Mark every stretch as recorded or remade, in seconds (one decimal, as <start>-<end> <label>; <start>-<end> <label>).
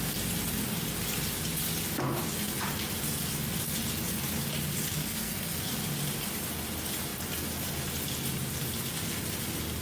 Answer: 0.0-4.9 recorded; 4.9-5.7 remade; 5.7-9.8 recorded